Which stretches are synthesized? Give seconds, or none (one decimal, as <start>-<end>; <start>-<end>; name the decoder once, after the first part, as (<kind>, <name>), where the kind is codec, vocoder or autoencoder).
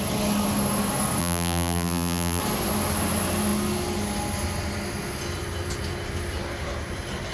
1.2-2.4 (vocoder, BigVGAN v2)